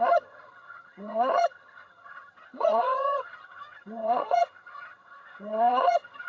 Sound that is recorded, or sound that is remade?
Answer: remade